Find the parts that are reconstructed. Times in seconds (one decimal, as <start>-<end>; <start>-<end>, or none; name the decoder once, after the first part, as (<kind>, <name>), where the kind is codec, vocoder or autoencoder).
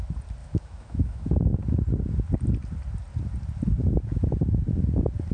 0.4-1.3 (autoencoder, DAC-VAE)